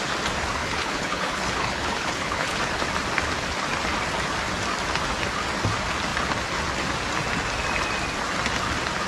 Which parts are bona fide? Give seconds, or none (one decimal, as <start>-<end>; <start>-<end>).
0.0-0.6; 2.6-9.1